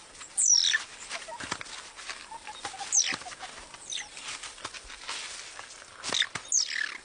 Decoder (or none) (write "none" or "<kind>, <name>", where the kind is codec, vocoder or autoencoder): none